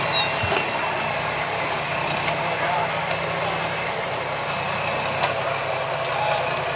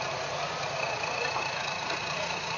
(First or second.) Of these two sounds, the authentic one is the first